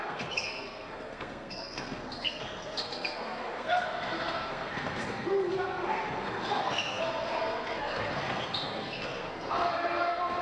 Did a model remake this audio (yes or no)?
yes